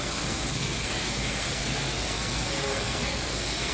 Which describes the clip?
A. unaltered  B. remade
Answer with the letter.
B